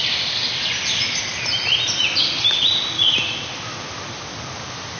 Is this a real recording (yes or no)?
yes